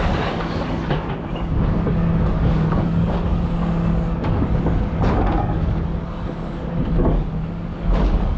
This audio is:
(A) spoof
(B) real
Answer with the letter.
A